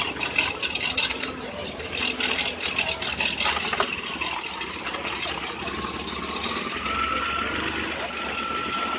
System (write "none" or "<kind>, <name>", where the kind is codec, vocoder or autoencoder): none